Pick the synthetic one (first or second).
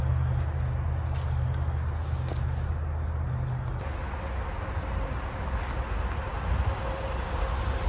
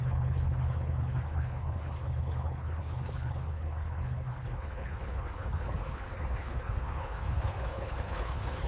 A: second